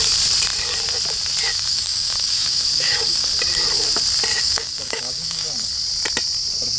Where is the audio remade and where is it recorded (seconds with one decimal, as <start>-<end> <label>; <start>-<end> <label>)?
0.0-1.5 recorded; 1.5-3.3 remade; 3.3-4.3 recorded; 4.3-5.7 remade; 5.7-6.8 recorded